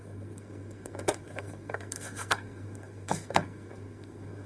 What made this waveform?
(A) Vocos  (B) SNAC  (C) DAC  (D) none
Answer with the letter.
B